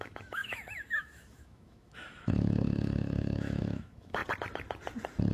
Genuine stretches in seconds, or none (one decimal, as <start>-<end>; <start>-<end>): 4.2-5.3